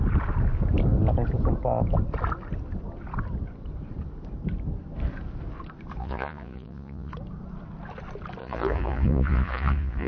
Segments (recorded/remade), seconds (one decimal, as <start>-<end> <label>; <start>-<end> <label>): 0.0-6.0 recorded; 6.0-7.1 remade; 7.1-8.4 recorded; 8.4-10.1 remade